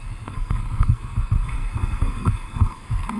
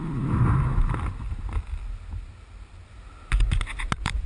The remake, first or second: first